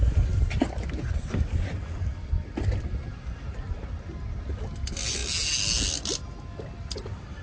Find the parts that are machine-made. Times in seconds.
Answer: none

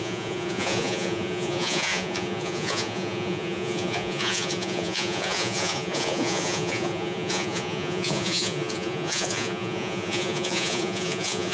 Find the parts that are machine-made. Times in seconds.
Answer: 0.0-11.5 (vocoder, Vocos)